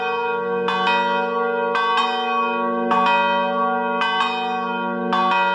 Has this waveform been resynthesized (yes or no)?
no